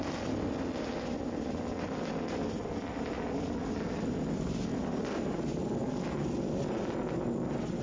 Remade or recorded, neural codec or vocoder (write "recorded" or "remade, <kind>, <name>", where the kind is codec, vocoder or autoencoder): recorded